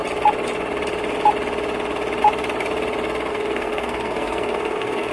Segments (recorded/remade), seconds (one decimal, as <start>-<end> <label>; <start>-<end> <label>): 0.0-3.3 recorded; 3.3-5.1 remade